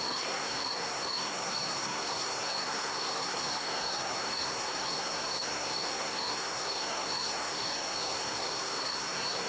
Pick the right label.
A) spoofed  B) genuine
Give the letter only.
A